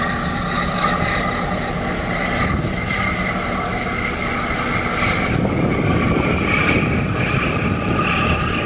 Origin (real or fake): real